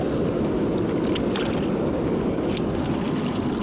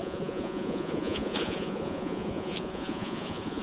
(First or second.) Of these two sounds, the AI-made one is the second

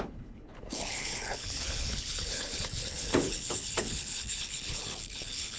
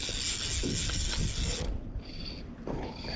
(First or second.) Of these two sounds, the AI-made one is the first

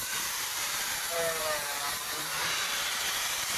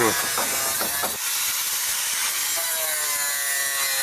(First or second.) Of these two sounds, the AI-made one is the first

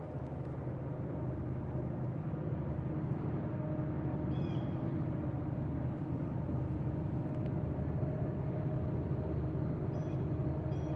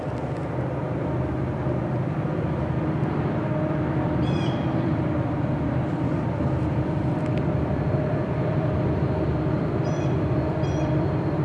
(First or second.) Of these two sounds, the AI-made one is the second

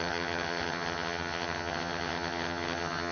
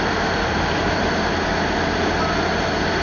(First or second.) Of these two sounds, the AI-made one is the first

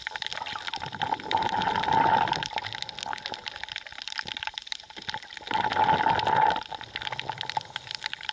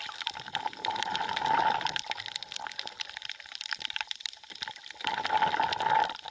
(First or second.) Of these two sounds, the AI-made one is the second